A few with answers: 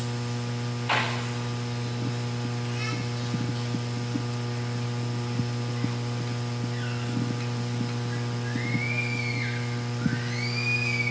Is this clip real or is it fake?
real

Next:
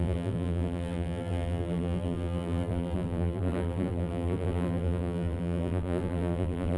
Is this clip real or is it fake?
fake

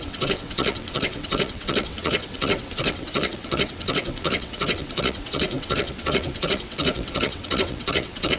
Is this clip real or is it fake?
fake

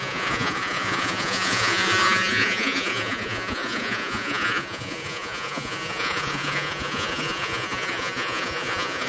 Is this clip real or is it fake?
fake